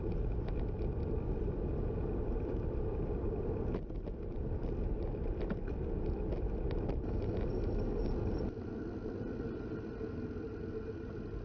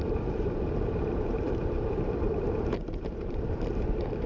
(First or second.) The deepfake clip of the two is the second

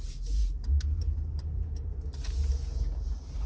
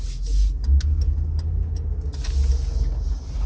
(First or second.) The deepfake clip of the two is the first